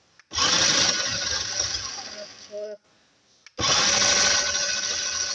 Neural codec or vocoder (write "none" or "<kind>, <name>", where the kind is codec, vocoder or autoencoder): none